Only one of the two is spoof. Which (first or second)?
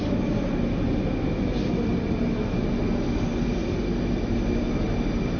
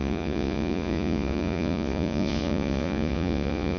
second